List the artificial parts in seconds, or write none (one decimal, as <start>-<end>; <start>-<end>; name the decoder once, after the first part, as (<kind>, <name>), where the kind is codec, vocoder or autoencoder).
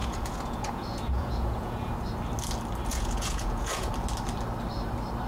0.0-1.9 (vocoder, Vocos); 2.9-3.9